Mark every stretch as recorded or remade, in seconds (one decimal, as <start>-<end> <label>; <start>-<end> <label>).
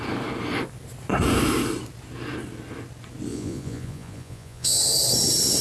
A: 0.0-3.3 recorded; 3.3-4.8 remade; 4.8-5.6 recorded